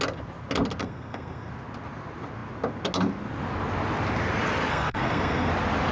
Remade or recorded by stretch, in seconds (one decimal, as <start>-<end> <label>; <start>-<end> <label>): 0.0-0.8 recorded; 0.8-1.5 remade; 1.5-4.7 recorded; 4.7-5.5 remade; 5.5-5.9 recorded